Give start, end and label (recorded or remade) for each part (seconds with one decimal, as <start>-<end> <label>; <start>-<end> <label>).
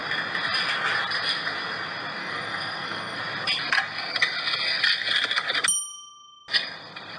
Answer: 0.0-2.2 recorded; 2.2-3.2 remade; 3.2-7.2 recorded